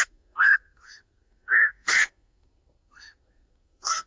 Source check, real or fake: fake